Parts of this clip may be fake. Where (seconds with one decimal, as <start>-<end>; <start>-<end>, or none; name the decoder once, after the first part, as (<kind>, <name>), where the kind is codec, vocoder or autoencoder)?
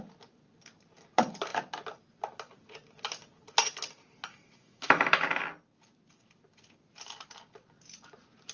4.3-5.4 (autoencoder, DAC-VAE)